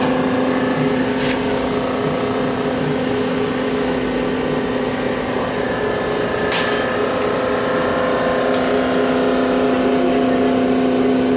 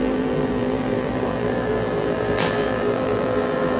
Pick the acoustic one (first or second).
first